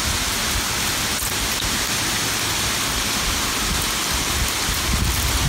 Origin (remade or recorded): recorded